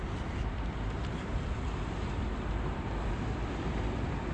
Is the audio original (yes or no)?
yes